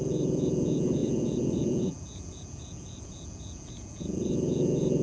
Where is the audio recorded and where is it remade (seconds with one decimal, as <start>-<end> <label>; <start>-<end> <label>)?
0.0-5.0 remade